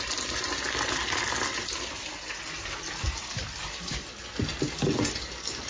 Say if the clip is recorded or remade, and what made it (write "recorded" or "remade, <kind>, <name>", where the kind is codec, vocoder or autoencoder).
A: recorded